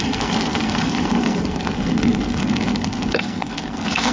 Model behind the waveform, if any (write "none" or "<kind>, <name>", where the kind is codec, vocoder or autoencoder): codec, SNAC